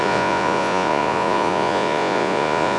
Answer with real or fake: fake